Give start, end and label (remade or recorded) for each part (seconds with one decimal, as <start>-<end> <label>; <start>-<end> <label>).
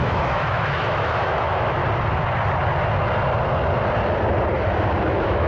0.0-1.8 remade; 1.8-5.1 recorded; 5.1-5.5 remade